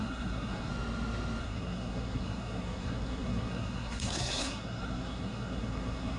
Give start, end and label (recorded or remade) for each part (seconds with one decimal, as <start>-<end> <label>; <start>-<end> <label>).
0.0-0.7 remade; 0.7-1.4 recorded; 1.4-6.2 remade